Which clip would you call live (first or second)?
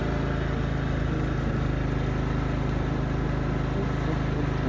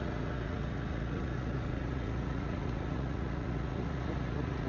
first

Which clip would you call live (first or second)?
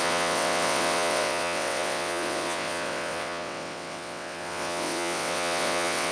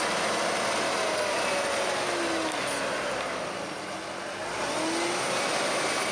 second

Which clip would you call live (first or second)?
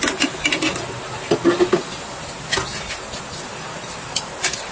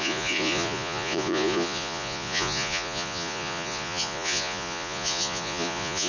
first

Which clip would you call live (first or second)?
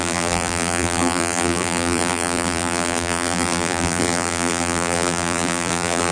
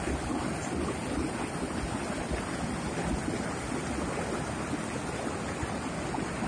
second